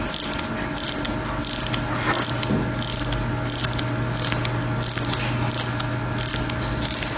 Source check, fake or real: real